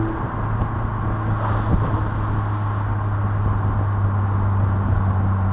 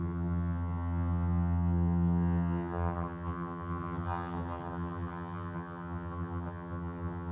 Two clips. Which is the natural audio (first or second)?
first